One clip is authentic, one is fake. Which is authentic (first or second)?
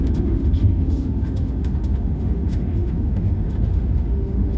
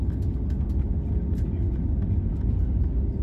second